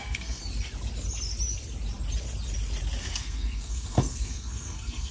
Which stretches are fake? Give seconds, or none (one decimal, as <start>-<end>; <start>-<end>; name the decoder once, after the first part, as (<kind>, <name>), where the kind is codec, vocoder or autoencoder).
0.0-0.4 (codec, SNAC); 3.0-5.1